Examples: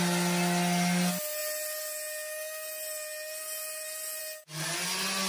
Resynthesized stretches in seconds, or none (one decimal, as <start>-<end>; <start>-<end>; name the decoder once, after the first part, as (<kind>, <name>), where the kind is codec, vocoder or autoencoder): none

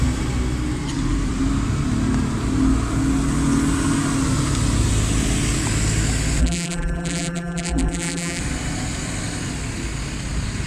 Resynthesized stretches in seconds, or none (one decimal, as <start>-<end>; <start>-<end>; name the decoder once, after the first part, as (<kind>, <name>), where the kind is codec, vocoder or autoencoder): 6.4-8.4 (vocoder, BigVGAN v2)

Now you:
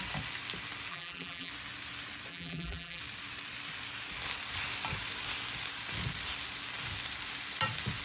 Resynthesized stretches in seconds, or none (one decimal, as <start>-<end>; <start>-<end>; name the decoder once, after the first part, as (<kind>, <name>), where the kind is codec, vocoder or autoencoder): 0.9-1.5 (vocoder, BigVGAN v2); 2.3-3.0

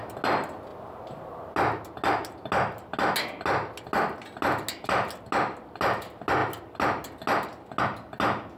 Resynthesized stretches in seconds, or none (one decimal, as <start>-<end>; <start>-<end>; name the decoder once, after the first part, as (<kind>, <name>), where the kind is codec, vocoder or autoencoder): none